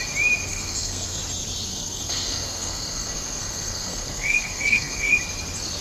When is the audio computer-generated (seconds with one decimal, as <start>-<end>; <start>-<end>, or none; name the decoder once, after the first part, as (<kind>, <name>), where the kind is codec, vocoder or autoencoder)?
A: 0.5-1.2 (codec, SNAC); 1.7-5.2